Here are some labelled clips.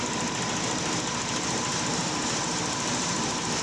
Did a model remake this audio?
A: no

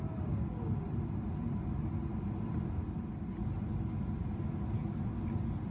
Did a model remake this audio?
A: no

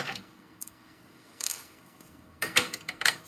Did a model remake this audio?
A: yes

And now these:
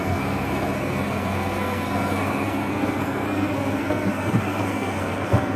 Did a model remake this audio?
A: yes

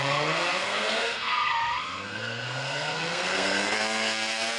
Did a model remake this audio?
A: yes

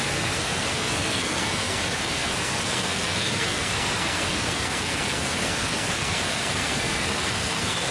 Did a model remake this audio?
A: yes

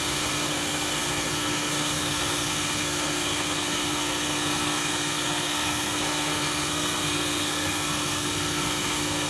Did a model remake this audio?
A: yes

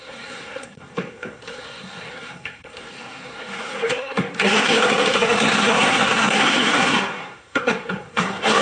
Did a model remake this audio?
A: yes